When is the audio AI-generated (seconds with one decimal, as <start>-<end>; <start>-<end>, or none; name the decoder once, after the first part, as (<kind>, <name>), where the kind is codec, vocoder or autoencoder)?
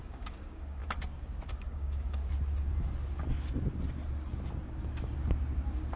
0.0-0.8 (codec, DAC); 1.5-2.2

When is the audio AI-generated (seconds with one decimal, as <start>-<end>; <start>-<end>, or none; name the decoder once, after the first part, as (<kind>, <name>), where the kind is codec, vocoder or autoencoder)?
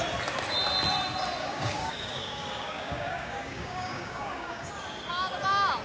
1.4-4.7 (codec, DAC)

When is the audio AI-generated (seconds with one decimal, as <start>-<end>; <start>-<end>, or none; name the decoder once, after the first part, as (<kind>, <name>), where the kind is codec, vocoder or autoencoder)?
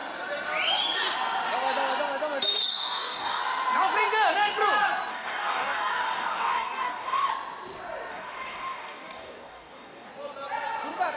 2.7-3.4 (codec, DAC); 5.1-7.3; 8.1-10.1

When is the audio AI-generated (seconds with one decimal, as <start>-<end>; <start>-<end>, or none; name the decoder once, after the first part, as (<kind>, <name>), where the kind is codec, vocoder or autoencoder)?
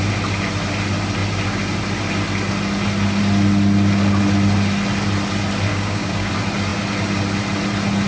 5.7-6.3 (codec, DAC)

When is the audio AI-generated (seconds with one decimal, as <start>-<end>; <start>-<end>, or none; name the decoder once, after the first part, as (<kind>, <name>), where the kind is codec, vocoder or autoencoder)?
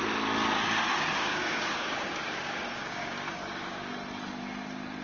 0.9-3.9 (codec, DAC)